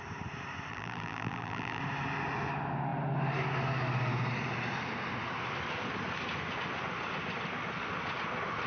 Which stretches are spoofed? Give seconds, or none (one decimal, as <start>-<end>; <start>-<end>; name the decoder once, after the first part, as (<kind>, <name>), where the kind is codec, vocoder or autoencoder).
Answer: 0.7-1.8 (vocoder, BigVGAN v2)

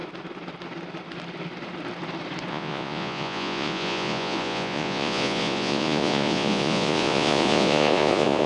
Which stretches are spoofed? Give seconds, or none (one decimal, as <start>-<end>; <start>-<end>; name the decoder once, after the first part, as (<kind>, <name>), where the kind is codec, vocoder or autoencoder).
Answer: 2.5-8.5 (vocoder, Vocos)

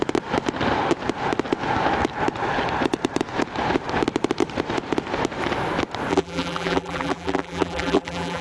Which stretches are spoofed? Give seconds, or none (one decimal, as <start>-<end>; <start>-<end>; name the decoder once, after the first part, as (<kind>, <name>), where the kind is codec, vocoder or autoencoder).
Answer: 6.1-8.4 (vocoder, BigVGAN v2)

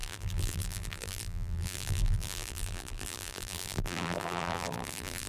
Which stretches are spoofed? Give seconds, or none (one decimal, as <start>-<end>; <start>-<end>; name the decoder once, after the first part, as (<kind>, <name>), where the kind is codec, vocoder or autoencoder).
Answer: 0.0-5.3 (vocoder, BigVGAN v2)